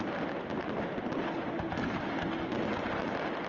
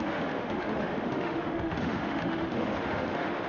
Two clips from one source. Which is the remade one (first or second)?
second